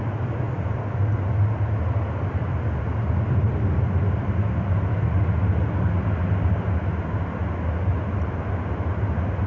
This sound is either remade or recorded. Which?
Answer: recorded